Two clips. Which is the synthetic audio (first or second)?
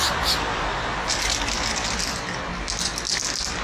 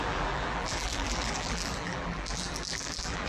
second